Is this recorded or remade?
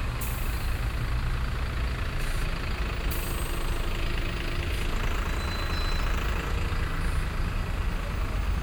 recorded